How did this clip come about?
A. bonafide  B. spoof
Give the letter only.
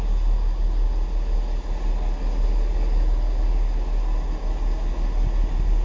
A